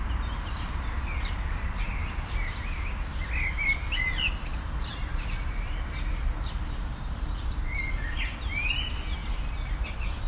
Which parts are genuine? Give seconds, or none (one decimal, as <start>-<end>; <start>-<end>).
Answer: 0.0-10.3